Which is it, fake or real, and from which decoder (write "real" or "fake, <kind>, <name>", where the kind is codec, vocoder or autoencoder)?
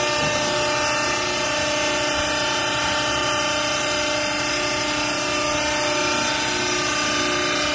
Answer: real